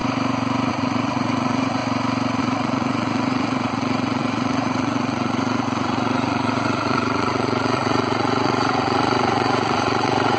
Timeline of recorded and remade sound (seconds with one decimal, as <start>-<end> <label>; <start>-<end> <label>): 0.0-0.7 recorded; 0.7-1.8 remade; 1.8-2.4 recorded; 2.4-10.4 remade